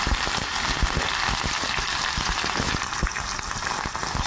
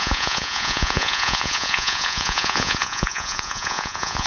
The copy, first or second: second